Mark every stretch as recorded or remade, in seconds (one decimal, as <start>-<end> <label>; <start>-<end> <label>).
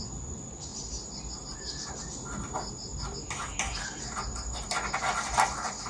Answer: 0.0-5.9 recorded